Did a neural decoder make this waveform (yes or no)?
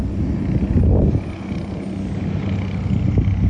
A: no